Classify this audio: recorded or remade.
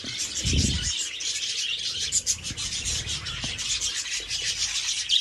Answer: recorded